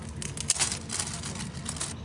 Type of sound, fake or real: real